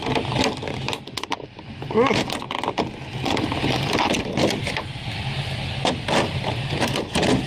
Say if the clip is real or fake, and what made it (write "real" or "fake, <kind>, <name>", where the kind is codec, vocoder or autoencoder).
real